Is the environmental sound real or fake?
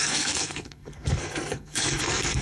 fake